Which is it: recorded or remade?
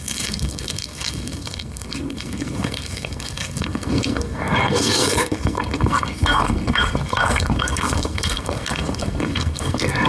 remade